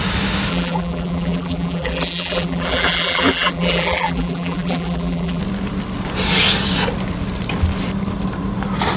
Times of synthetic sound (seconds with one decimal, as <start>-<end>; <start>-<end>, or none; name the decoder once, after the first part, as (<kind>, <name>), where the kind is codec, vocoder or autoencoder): 0.5-5.4 (vocoder, BigVGAN v2)

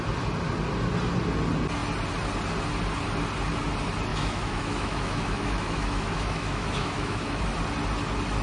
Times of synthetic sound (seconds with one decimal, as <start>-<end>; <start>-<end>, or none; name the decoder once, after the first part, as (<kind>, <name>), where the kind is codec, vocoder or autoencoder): 4.1-7.4 (autoencoder, DAC-VAE)

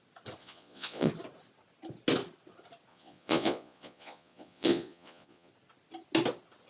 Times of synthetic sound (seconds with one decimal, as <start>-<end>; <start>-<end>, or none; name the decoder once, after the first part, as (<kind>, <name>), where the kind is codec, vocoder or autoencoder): 0.4-1.1 (vocoder, Vocos); 2.9-5.5